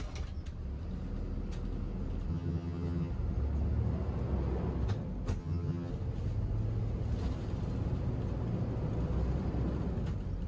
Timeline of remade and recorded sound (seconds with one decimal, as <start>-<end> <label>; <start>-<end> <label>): 0.0-2.3 recorded; 2.3-3.1 remade; 3.1-5.4 recorded; 5.4-5.9 remade; 5.9-10.5 recorded

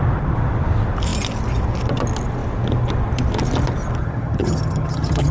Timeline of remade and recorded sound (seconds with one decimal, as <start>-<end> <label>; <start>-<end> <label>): 0.0-4.0 recorded; 4.0-5.3 remade

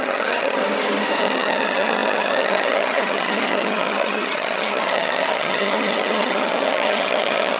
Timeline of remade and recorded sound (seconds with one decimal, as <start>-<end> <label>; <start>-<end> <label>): 0.0-0.6 remade; 0.6-1.2 recorded; 1.2-7.6 remade

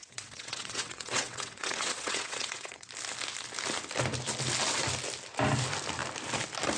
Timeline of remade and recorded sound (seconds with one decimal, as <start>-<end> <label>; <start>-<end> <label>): 0.0-2.9 remade; 2.9-6.8 recorded